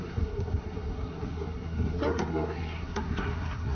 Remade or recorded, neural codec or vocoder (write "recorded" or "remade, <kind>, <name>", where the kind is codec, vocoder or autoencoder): remade, codec, SNAC